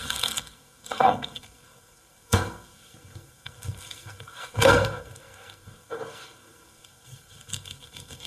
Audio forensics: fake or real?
fake